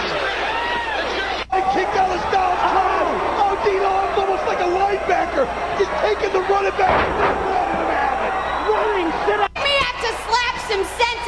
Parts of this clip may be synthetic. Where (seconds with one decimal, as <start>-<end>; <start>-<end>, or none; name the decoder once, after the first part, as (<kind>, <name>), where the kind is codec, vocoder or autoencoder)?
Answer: none